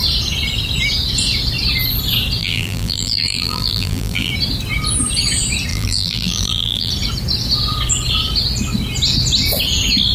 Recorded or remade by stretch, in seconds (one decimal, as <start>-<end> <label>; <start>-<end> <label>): 0.0-2.4 recorded; 2.4-4.3 remade; 4.3-5.7 recorded; 5.7-6.9 remade; 6.9-10.1 recorded